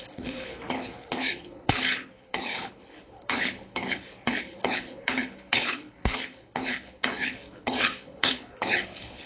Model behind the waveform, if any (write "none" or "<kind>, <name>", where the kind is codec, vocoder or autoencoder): codec, HILCodec